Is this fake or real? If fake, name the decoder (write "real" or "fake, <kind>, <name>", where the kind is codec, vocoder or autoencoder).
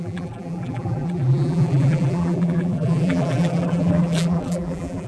fake, vocoder, BigVGAN v2